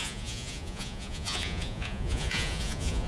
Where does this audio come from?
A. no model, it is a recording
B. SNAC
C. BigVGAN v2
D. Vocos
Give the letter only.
D